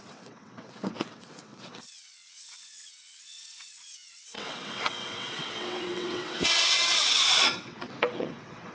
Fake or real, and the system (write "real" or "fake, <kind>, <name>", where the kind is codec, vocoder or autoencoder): fake, vocoder, WaveNeXt